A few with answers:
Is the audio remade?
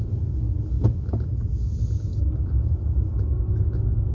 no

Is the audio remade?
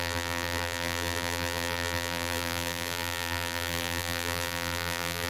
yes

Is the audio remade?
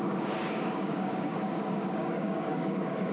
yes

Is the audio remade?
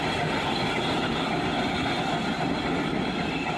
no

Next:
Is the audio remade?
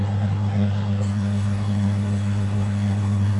yes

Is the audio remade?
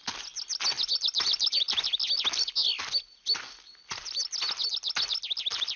no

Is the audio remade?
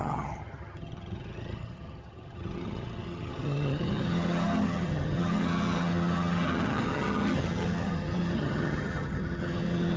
yes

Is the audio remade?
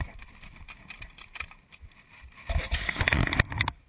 no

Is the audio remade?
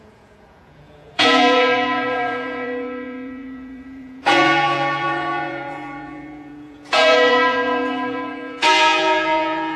yes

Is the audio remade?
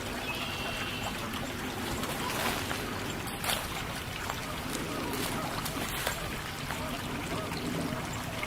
no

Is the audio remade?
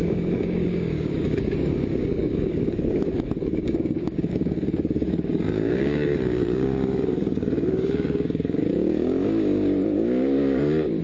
yes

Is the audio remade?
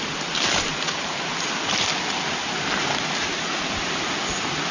no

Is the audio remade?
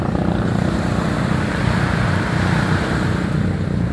yes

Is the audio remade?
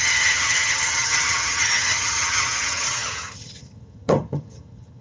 yes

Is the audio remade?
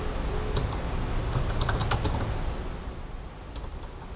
no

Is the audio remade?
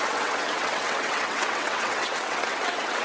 yes